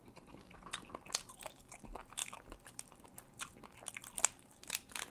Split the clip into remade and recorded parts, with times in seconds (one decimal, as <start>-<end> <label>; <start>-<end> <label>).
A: 0.0-5.1 recorded